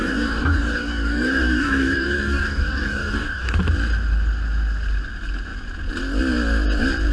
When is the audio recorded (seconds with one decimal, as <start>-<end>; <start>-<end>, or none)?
3.6-7.1

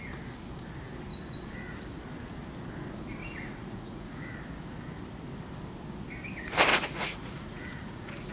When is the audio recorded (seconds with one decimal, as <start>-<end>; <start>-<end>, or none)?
0.0-3.2; 4.2-6.7

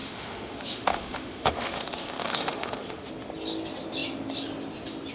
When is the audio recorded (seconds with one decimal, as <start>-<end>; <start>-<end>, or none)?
3.1-5.1

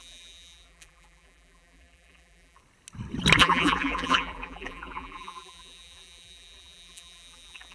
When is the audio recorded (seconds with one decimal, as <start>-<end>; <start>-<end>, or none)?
2.6-3.4